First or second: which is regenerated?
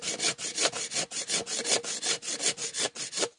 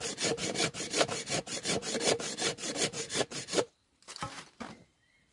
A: second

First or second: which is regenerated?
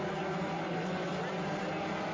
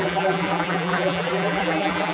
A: second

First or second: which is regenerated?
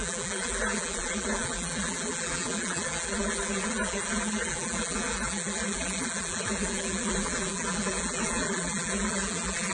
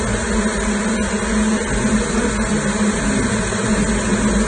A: first